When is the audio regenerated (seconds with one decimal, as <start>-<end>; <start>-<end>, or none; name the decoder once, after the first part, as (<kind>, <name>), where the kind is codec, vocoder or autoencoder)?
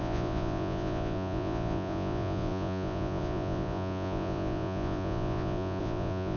0.0-6.4 (vocoder, Vocos)